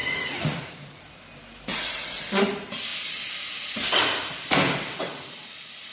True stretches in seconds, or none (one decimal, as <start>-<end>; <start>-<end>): 1.0-1.7; 2.2-5.9